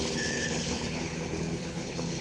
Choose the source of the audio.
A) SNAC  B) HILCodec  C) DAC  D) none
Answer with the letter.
B